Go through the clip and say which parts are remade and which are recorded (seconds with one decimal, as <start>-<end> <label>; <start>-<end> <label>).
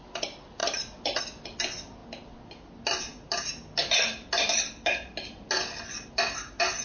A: 0.0-6.8 recorded